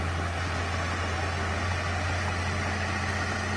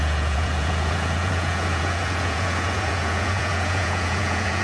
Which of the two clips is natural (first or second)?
first